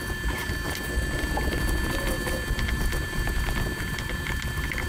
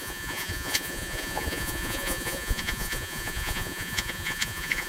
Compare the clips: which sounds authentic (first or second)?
first